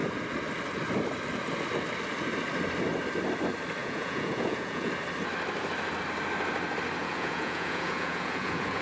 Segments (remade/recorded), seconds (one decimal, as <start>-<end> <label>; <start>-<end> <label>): 0.0-3.8 recorded; 3.8-4.9 remade; 4.9-7.0 recorded; 7.0-8.8 remade